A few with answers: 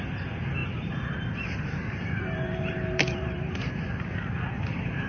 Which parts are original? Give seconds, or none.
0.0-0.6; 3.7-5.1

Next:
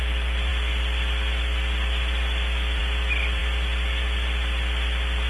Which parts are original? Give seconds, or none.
0.0-5.3

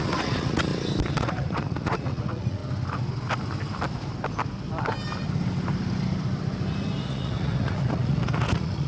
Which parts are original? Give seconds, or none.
0.7-1.2; 2.6-7.1

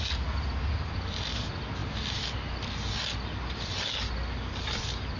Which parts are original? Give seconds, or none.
0.0-5.2

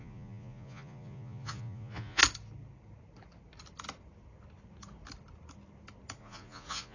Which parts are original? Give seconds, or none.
2.2-6.2

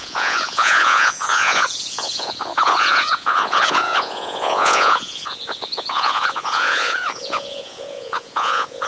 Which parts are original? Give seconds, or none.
none